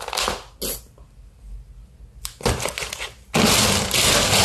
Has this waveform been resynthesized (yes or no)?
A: no